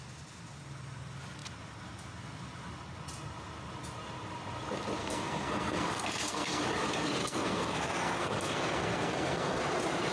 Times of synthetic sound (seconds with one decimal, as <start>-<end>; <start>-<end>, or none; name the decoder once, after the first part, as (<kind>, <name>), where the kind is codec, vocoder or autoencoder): 5.0-6.6 (codec, SNAC); 7.2-9.6